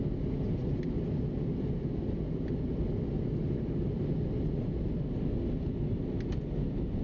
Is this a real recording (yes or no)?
yes